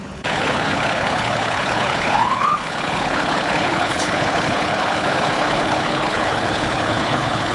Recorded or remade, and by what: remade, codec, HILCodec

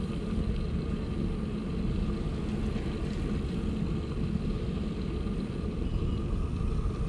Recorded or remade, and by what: recorded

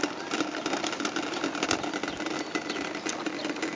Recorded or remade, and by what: recorded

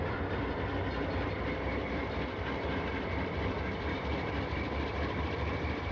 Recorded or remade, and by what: remade, vocoder, BigVGAN v2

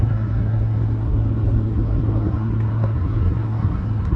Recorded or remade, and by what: remade, codec, SNAC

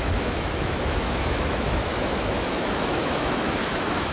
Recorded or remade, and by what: remade, autoencoder, DAC-VAE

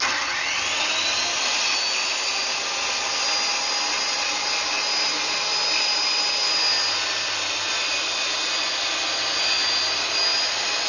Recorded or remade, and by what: recorded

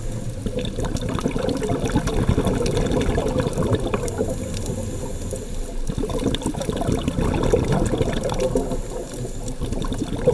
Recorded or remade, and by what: recorded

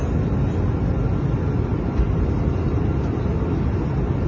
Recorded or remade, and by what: recorded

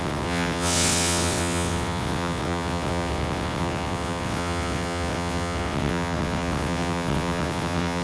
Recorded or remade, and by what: remade, vocoder, WaveNeXt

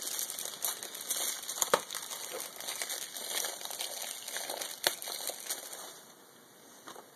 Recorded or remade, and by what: recorded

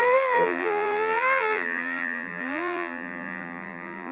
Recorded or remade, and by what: remade, vocoder, BigVGAN v2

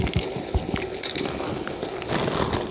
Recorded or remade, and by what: recorded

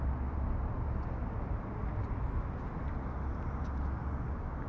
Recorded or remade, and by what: recorded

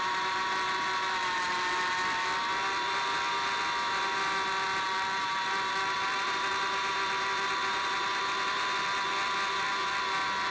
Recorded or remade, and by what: recorded